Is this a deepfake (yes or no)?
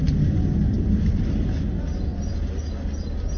no